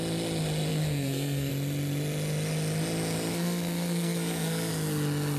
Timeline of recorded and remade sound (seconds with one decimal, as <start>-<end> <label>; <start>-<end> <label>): 0.0-0.7 recorded; 0.7-1.5 remade; 1.5-3.3 recorded; 3.3-4.7 remade; 4.7-5.4 recorded